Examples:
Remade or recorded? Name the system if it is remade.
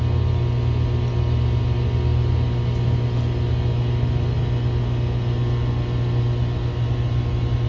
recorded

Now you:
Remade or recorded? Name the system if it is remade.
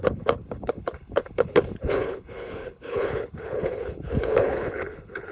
remade, codec, HILCodec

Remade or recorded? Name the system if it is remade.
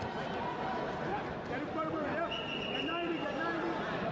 recorded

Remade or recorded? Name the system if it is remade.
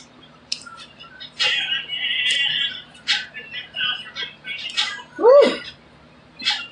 remade, vocoder, BigVGAN v2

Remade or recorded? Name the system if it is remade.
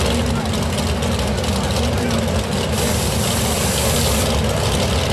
recorded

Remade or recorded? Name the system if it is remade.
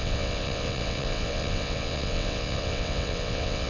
remade, vocoder, WaveNeXt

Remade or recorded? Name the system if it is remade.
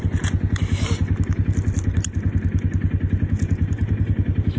recorded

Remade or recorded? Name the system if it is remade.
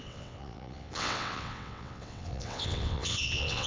remade, vocoder, WaveNeXt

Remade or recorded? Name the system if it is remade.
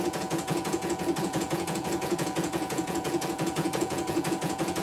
remade, vocoder, Vocos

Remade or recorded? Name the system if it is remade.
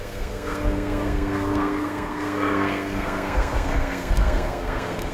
remade, codec, SNAC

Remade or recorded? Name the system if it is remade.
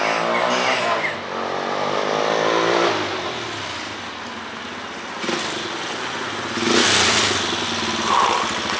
recorded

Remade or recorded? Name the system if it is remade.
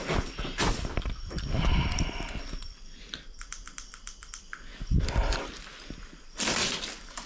remade, vocoder, BigVGAN v2